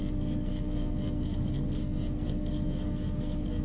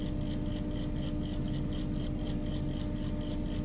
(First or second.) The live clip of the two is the second